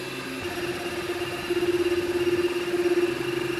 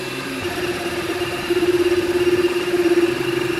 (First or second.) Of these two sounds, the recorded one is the first